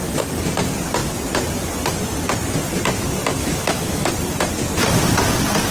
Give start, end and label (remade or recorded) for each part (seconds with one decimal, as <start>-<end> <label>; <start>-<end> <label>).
0.0-3.4 recorded; 3.4-4.1 remade; 4.1-5.7 recorded